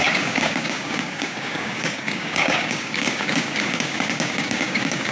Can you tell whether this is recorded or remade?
remade